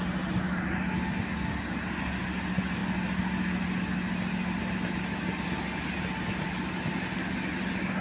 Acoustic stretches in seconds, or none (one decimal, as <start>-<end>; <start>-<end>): 0.0-8.0